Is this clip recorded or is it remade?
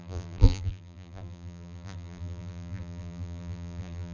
remade